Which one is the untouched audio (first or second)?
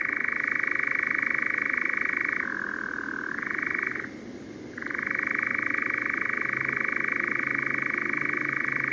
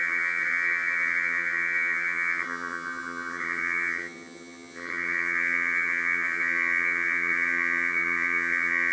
first